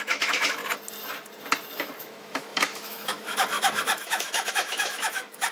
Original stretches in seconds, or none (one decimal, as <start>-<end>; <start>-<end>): 0.6-2.0